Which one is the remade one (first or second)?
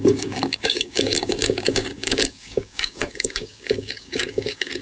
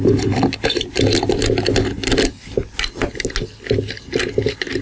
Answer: first